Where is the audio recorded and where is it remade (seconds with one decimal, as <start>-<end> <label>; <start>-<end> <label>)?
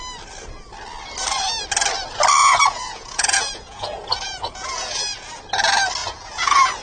0.0-2.4 recorded; 2.4-5.4 remade; 5.4-6.0 recorded; 6.0-6.8 remade